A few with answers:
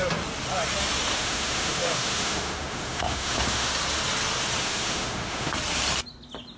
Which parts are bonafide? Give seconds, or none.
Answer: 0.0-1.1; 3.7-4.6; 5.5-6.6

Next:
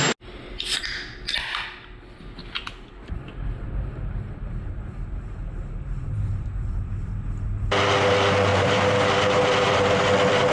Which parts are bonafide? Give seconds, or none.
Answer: 0.0-2.4; 6.9-8.5; 10.1-10.5